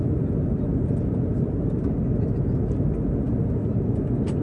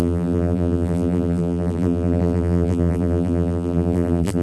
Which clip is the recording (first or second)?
first